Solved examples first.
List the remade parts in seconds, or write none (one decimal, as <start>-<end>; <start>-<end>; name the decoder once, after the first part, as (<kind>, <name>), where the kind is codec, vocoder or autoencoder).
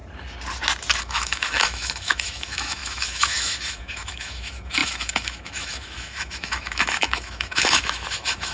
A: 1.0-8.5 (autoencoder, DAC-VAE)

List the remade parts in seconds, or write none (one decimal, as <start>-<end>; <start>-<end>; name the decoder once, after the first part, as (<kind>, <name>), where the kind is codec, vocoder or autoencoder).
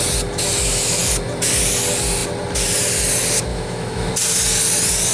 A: 3.5-4.1 (autoencoder, DAC-VAE)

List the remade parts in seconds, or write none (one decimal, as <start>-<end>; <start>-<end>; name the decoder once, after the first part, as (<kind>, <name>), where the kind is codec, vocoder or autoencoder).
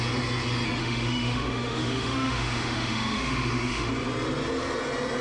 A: 0.8-3.9 (autoencoder, DAC-VAE)